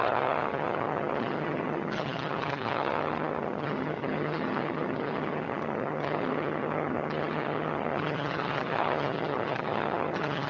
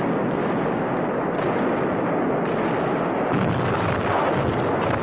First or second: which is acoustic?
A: second